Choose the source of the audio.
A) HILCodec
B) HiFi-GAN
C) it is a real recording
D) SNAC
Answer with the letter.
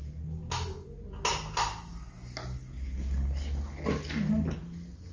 C